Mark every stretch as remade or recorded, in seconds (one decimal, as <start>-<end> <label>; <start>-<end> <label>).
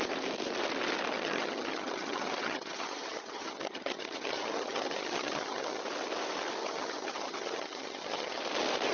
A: 0.0-1.1 recorded; 1.1-5.8 remade; 5.8-6.6 recorded; 6.6-8.4 remade; 8.4-8.9 recorded